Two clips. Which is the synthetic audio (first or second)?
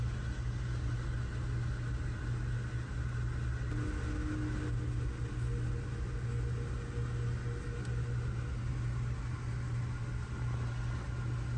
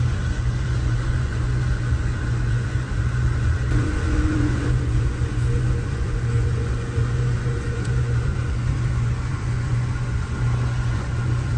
second